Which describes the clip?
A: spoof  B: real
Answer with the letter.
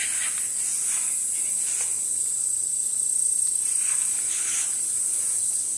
B